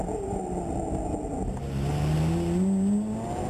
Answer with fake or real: real